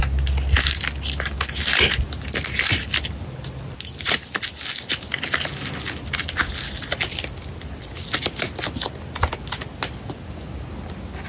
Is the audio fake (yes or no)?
no